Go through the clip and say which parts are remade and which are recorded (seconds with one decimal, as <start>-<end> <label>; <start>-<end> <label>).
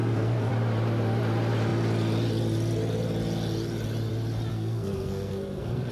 0.0-0.5 remade; 0.5-4.5 recorded; 4.5-5.9 remade